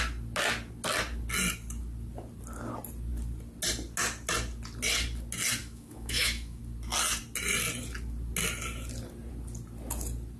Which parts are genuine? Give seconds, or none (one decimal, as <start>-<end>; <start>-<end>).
0.0-5.6; 6.6-10.4